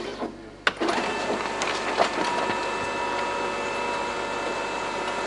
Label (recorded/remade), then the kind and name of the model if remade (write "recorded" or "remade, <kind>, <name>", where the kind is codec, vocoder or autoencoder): recorded